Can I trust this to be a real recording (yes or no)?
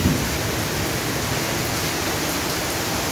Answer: yes